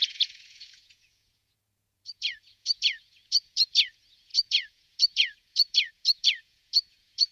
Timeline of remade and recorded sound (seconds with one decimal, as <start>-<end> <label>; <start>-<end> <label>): 0.0-7.3 remade